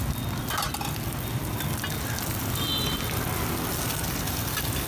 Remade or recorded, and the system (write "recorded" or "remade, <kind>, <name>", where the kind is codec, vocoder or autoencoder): recorded